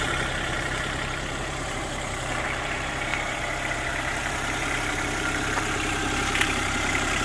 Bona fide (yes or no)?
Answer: no